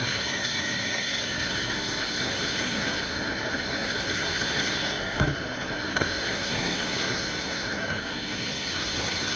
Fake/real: fake